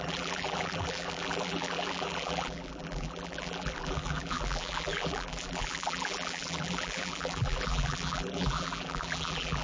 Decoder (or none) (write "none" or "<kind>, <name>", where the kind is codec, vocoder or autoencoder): vocoder, BigVGAN v2